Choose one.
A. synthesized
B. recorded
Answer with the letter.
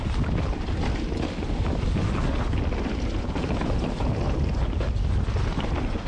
B